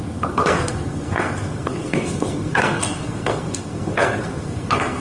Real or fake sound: fake